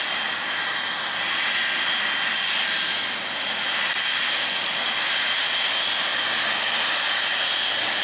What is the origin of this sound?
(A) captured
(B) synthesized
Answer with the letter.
A